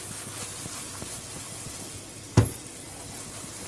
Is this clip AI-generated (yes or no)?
no